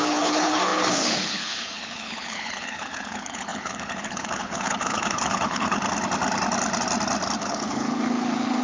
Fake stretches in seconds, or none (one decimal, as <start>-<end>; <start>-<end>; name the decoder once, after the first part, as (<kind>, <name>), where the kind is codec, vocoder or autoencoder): 0.0-5.8 (codec, HILCodec); 7.4-8.6